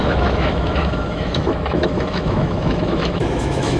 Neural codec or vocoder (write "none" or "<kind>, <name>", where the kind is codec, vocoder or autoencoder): autoencoder, DAC-VAE